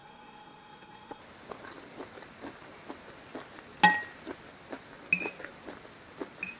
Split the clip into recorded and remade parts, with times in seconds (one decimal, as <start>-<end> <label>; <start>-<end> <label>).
0.0-1.2 remade; 1.2-6.6 recorded